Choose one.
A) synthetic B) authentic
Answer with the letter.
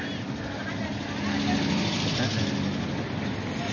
B